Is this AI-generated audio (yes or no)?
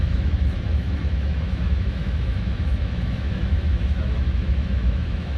yes